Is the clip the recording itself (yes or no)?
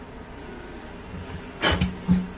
yes